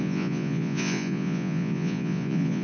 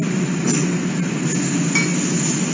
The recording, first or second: second